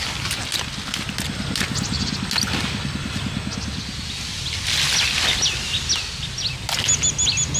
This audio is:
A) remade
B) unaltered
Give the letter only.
B